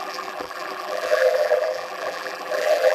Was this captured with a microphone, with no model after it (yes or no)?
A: no